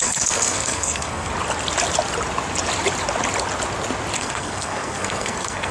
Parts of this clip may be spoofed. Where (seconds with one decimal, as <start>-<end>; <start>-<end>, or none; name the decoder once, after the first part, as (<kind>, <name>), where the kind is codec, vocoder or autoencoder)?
0.0-1.3 (codec, SNAC); 4.2-5.7